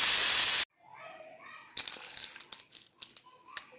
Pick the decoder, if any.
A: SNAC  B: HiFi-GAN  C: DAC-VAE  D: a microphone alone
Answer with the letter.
D